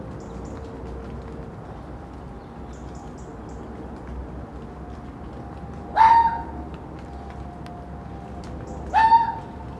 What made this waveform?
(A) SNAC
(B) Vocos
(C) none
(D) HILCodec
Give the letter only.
C